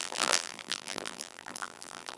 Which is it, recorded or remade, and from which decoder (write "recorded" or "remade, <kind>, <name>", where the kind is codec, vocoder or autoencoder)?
remade, vocoder, BigVGAN v2